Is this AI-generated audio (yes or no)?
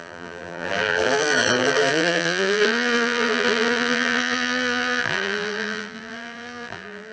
yes